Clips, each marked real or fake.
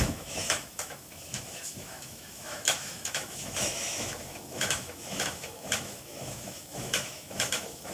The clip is fake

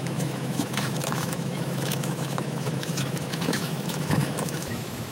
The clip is fake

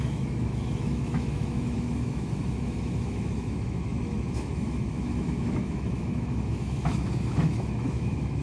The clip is fake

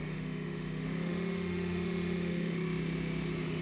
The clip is fake